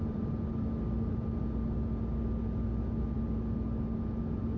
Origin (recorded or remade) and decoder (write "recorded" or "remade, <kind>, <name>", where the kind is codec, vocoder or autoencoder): recorded